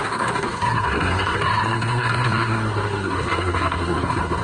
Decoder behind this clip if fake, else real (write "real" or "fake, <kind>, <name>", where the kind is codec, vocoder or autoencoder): fake, codec, SNAC